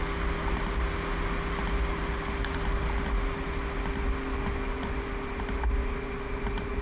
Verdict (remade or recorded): recorded